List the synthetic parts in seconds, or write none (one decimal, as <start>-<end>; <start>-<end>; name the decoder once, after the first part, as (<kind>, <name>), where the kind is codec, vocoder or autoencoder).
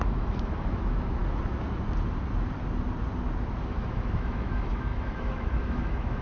0.0-1.2 (autoencoder, DAC-VAE); 3.6-6.2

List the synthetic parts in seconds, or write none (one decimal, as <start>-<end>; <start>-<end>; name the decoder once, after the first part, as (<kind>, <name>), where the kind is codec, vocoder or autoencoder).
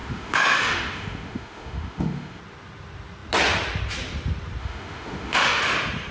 0.0-2.4 (autoencoder, DAC-VAE); 4.6-5.6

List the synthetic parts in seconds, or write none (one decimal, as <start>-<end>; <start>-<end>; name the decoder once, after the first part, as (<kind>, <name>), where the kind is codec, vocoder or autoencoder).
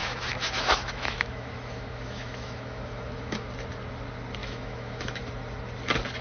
0.0-3.5 (autoencoder, DAC-VAE); 4.4-5.2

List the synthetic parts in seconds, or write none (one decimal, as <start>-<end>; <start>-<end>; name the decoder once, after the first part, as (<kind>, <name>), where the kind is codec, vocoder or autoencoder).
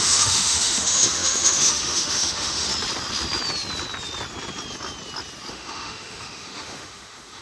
0.0-2.7 (autoencoder, DAC-VAE); 5.5-7.4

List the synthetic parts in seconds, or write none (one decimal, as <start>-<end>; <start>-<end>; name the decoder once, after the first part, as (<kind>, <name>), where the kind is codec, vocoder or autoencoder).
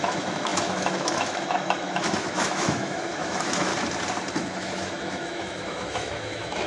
0.0-3.7 (autoencoder, DAC-VAE); 4.3-6.7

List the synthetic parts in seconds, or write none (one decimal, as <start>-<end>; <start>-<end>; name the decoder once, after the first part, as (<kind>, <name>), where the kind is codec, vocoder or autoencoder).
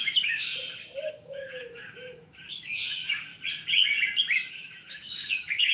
0.0-0.5 (autoencoder, DAC-VAE); 1.1-3.3; 4.5-5.7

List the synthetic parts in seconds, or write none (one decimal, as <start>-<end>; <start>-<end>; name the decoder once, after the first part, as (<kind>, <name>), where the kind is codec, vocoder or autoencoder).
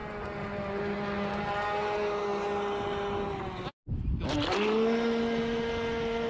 none